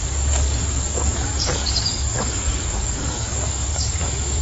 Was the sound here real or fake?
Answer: fake